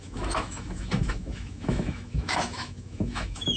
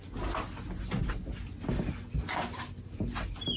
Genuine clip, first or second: second